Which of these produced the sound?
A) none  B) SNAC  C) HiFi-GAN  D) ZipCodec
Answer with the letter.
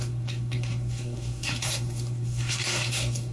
B